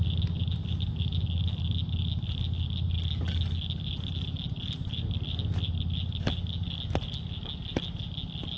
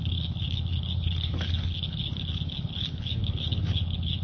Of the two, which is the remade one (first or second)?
second